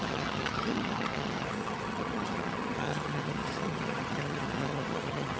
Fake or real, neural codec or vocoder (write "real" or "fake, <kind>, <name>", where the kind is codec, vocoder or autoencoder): fake, vocoder, HiFi-GAN